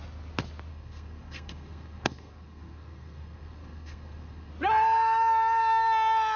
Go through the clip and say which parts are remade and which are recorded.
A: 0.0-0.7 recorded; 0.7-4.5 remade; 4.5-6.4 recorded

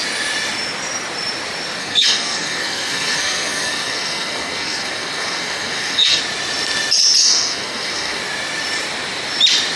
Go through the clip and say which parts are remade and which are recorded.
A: 0.0-1.8 recorded; 1.8-6.2 remade; 6.2-7.2 recorded; 7.2-8.2 remade; 8.2-9.8 recorded